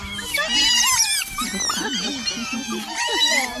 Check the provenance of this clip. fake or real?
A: real